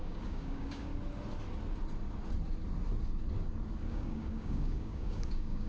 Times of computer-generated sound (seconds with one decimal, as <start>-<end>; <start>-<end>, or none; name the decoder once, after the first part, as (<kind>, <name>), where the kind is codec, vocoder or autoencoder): 0.0-0.9 (codec, DAC); 3.9-5.7